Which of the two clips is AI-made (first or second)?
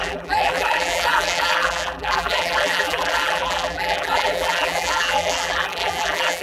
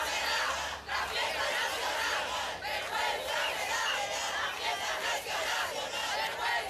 first